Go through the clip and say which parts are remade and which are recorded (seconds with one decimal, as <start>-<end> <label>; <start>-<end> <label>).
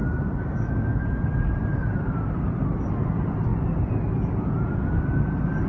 0.0-5.7 recorded